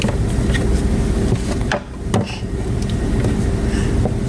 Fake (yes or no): no